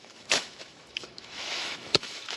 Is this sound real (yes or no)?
no